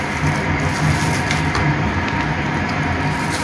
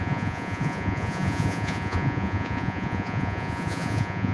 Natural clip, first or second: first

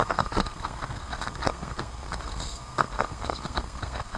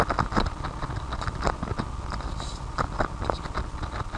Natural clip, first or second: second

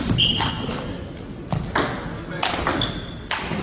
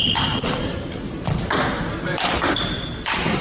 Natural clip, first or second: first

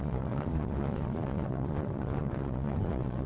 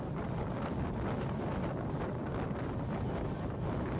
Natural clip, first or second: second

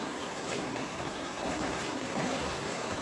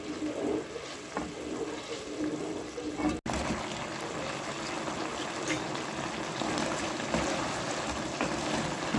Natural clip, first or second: second